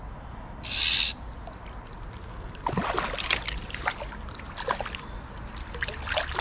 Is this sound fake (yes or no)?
no